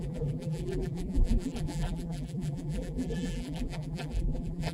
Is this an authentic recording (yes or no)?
no